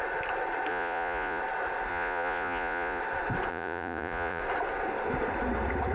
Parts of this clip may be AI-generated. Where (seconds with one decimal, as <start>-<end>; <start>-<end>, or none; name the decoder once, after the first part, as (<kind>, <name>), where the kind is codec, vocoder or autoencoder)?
0.7-1.4 (vocoder, Vocos); 1.9-3.0; 3.5-4.4